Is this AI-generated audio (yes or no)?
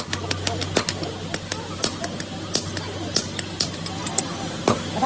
no